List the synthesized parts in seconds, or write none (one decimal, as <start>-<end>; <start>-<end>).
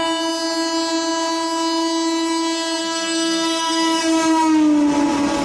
2.8-4.0